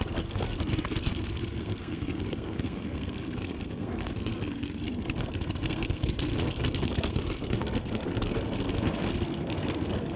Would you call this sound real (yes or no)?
no